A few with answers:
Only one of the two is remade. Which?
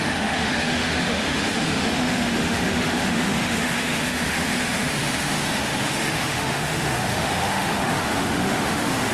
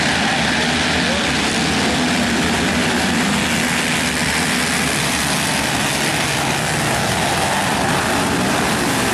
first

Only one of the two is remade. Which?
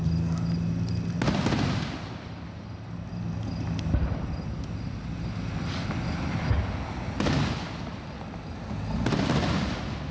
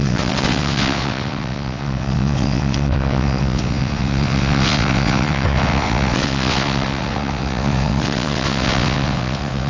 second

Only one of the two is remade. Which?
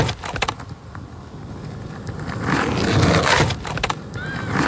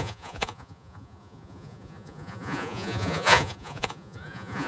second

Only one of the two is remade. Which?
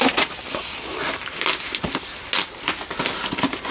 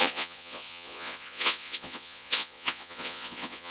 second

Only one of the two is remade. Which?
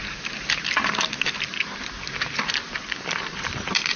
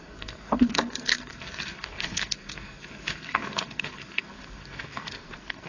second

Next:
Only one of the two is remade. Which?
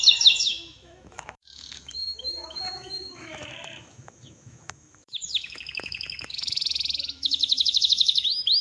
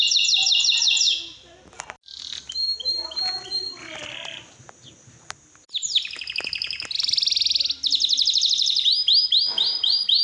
first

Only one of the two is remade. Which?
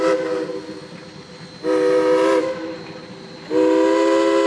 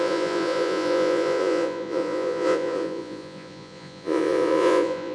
second